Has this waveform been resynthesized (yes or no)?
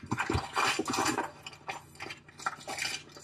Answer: no